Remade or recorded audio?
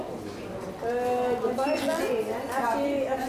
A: recorded